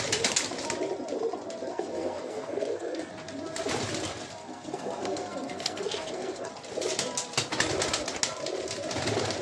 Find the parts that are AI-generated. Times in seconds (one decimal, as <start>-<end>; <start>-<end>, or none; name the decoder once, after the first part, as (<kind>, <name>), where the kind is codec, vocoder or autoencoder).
1.7-3.1 (codec, SNAC); 4.4-6.5